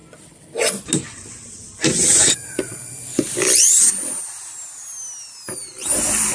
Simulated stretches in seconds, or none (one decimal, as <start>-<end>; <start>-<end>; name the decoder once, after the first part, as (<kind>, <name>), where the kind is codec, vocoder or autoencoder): none